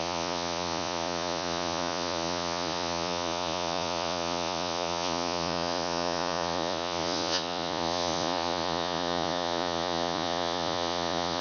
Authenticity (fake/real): fake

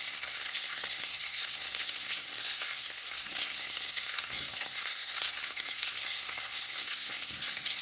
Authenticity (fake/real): fake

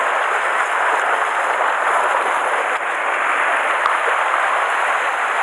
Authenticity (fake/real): real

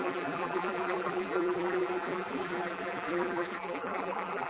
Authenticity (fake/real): fake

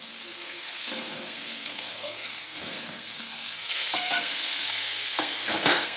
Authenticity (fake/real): fake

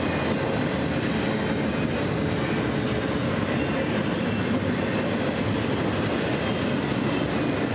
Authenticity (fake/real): real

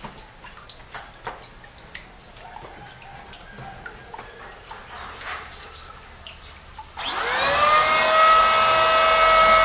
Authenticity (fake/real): real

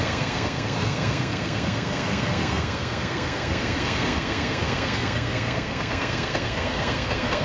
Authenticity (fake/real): fake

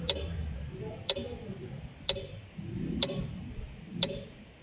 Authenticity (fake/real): fake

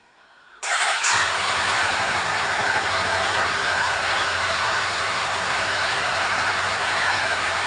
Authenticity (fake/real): fake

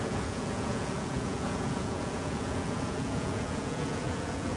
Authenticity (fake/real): fake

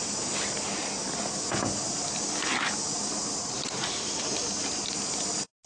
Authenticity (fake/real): real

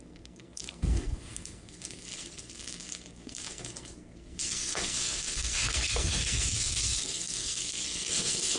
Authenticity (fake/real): fake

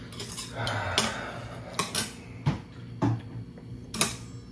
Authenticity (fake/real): real